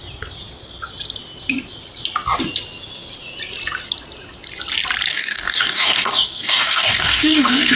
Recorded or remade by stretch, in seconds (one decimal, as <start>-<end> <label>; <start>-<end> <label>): 0.0-5.1 recorded; 5.1-7.8 remade